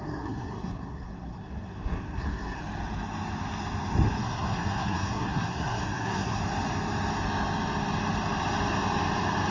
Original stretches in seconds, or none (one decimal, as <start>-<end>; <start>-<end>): 2.6-4.2; 6.4-9.5